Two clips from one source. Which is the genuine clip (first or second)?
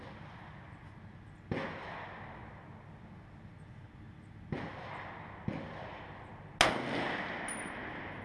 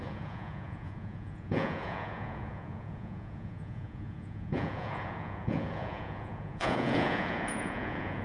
first